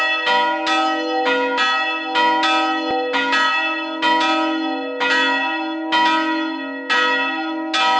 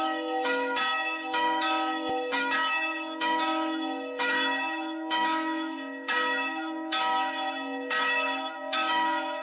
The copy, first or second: second